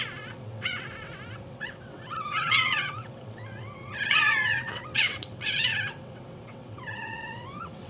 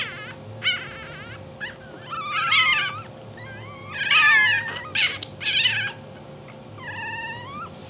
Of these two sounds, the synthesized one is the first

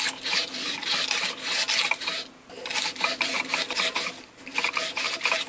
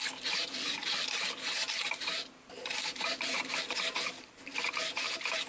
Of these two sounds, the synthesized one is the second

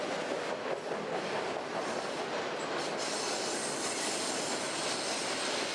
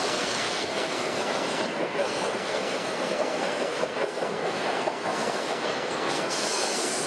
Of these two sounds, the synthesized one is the second